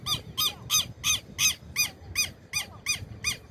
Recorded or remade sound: recorded